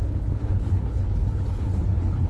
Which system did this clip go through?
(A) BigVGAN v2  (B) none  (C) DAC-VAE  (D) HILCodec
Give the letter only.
D